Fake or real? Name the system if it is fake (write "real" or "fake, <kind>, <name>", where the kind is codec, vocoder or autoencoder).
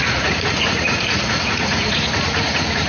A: fake, vocoder, Vocos